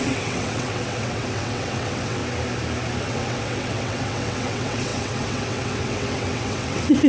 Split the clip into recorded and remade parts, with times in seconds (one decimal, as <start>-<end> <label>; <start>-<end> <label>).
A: 0.0-2.2 remade; 2.2-3.0 recorded; 3.0-7.1 remade